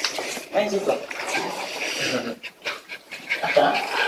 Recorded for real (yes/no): no